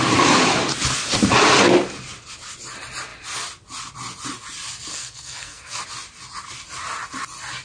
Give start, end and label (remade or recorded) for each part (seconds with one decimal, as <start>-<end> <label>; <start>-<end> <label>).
0.0-4.9 recorded; 4.9-5.8 remade; 5.8-7.6 recorded